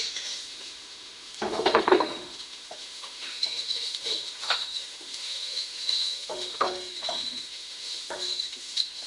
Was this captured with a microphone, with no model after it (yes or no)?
no